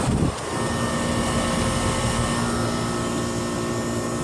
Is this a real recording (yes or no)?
yes